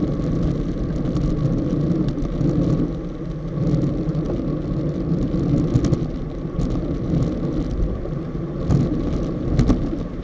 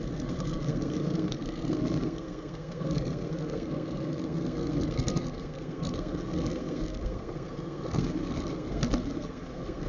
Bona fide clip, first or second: first